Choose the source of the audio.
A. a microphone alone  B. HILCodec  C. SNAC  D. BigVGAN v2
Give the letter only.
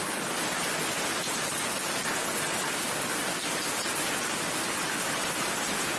A